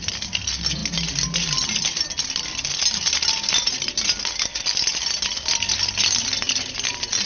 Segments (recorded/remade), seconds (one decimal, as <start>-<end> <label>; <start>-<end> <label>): 0.0-7.3 recorded

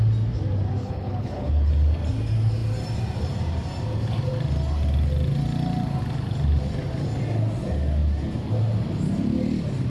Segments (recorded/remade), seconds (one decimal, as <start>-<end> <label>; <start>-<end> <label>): 0.0-0.8 recorded; 0.8-1.7 remade; 1.7-9.9 recorded

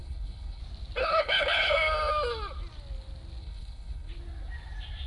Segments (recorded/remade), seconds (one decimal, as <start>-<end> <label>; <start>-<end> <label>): 0.0-0.6 remade; 0.6-1.0 recorded; 1.0-1.7 remade; 1.7-3.4 recorded; 3.4-4.1 remade; 4.1-5.1 recorded

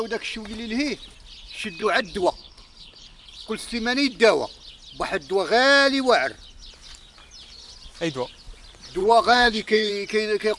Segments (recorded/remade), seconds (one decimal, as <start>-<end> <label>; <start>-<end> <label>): 0.0-1.8 recorded; 1.8-3.5 remade; 3.5-9.0 recorded; 9.0-9.9 remade; 9.9-10.6 recorded

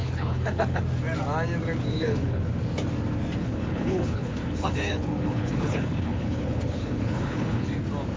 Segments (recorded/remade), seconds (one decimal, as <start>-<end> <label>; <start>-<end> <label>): 0.0-0.8 remade; 0.8-1.9 recorded; 1.9-2.4 remade; 2.4-3.4 recorded; 3.4-7.7 remade; 7.7-8.2 recorded

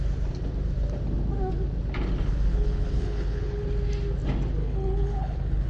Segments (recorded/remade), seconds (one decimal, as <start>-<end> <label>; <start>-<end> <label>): 0.0-2.5 recorded; 2.5-3.6 remade; 3.6-4.6 recorded; 4.6-5.7 remade

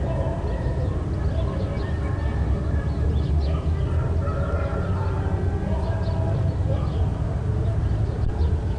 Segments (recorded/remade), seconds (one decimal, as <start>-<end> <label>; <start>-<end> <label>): 0.0-8.8 recorded

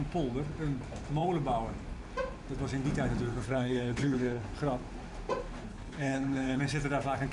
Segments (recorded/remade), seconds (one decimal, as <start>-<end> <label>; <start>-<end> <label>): 0.0-3.3 recorded; 3.3-4.4 remade; 4.4-5.7 recorded; 5.7-6.6 remade; 6.6-7.3 recorded